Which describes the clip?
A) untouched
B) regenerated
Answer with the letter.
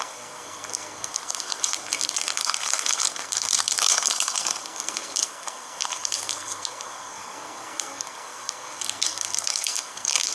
B